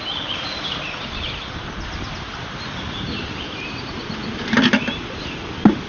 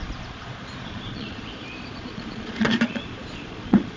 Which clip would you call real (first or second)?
first